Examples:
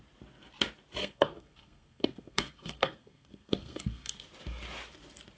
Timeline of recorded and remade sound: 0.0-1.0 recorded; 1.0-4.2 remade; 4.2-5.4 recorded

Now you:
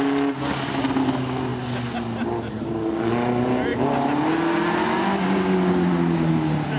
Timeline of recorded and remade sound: 0.0-6.8 recorded

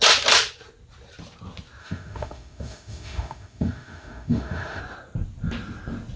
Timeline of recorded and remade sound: 0.0-1.8 recorded; 1.8-4.8 remade; 4.8-6.2 recorded